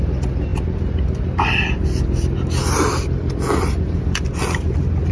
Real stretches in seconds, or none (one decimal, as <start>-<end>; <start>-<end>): 0.0-5.1